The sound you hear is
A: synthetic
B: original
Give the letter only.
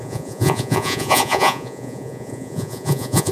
A